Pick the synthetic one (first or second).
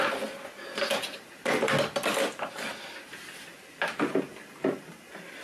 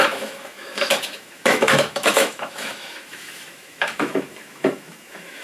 second